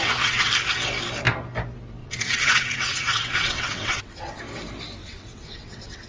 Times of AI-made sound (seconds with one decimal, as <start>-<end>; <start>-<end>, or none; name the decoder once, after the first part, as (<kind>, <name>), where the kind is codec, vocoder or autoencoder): 0.0-0.5 (vocoder, WaveNeXt); 2.0-4.4; 5.0-6.1